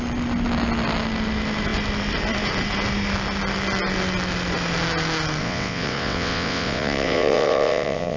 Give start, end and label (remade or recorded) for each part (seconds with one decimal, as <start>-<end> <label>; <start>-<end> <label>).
0.0-5.4 recorded; 5.4-8.2 remade